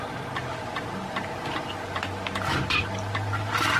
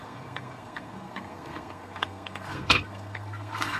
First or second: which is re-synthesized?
second